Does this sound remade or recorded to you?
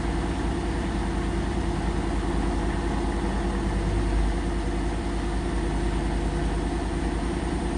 recorded